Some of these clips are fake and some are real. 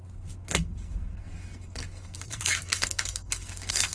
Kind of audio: fake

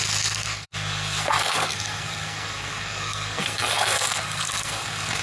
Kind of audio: fake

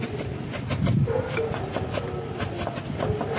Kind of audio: real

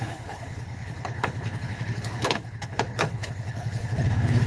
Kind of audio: fake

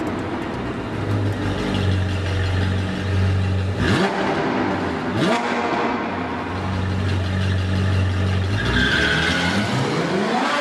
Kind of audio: real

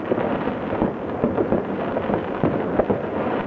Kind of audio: real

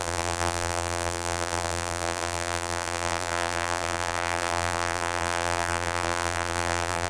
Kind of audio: fake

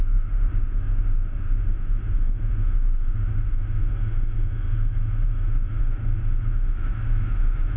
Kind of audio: fake